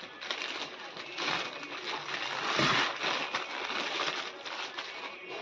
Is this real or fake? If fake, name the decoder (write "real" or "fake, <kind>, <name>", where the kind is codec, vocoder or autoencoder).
real